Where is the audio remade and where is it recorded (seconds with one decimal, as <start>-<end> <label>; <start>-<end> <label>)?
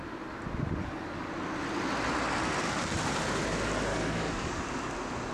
0.0-0.8 recorded; 0.8-1.3 remade; 1.3-3.9 recorded; 3.9-4.6 remade; 4.6-5.3 recorded